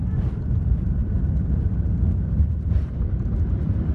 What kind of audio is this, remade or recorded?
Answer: remade